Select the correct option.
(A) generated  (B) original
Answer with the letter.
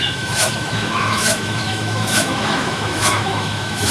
A